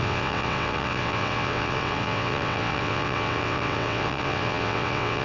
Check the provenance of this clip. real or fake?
fake